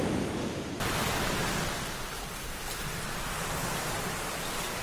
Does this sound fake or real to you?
real